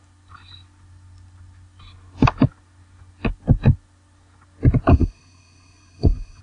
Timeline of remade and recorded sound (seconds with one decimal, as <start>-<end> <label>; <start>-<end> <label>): 0.0-4.9 recorded; 4.9-6.4 remade